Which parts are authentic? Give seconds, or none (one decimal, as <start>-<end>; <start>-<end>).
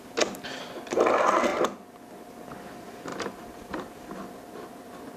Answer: 0.0-5.2